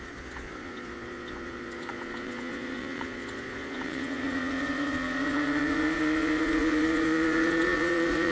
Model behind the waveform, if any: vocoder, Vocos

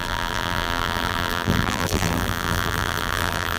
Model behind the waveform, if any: vocoder, BigVGAN v2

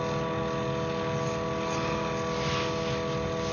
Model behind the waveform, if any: none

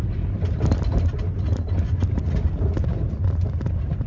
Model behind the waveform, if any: none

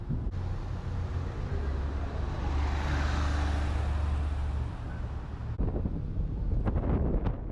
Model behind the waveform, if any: none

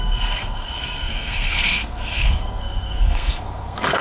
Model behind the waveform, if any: codec, SNAC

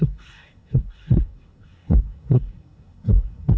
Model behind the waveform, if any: codec, SNAC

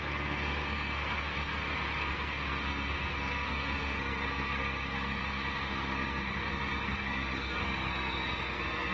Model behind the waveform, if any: codec, SNAC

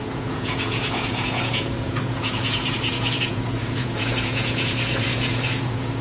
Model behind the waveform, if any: vocoder, Vocos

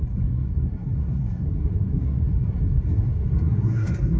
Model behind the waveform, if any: codec, SNAC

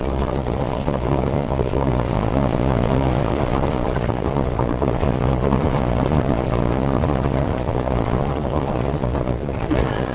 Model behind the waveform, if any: vocoder, Vocos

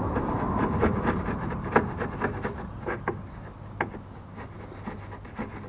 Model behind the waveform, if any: none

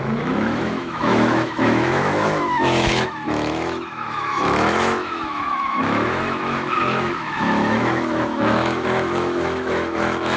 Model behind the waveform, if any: autoencoder, DAC-VAE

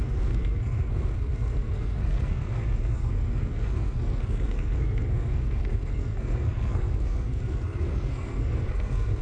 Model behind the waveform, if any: codec, SNAC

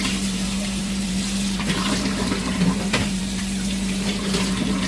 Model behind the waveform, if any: vocoder, BigVGAN v2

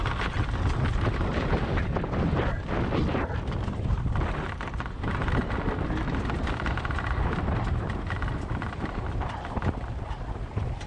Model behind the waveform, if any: vocoder, BigVGAN v2